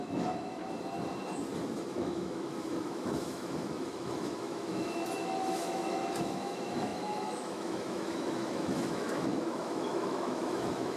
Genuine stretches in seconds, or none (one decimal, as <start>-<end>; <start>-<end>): 0.6-1.9